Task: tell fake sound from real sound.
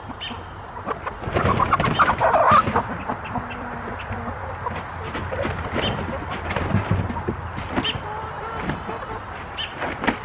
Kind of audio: real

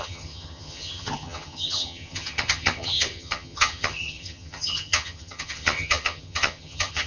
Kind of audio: fake